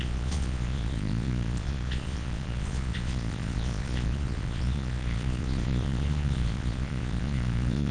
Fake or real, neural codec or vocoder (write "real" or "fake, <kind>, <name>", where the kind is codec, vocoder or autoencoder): fake, vocoder, Vocos